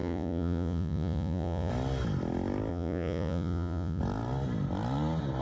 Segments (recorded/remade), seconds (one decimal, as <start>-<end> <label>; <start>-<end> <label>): 0.0-1.7 remade; 1.7-2.7 recorded; 2.7-4.0 remade; 4.0-5.4 recorded